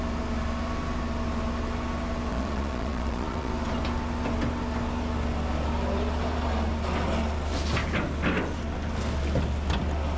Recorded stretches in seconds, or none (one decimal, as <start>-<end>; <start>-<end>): 0.0-2.3; 3.5-10.2